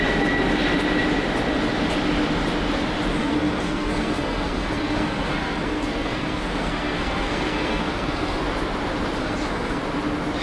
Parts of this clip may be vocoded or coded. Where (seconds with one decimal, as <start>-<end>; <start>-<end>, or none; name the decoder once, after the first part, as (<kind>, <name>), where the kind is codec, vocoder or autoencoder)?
3.2-8.4 (codec, SNAC); 9.2-9.8